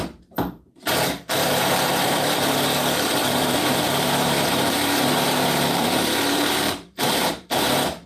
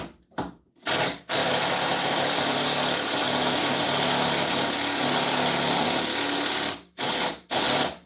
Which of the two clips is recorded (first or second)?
second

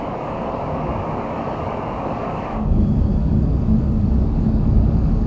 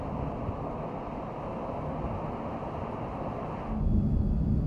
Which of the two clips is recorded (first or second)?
second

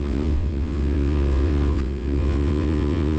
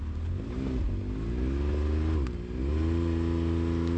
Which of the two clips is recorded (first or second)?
second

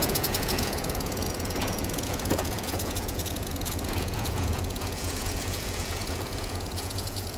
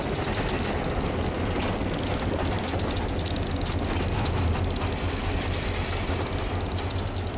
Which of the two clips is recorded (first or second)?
second